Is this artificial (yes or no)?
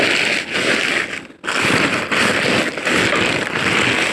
no